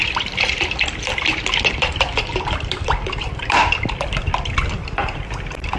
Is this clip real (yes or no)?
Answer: no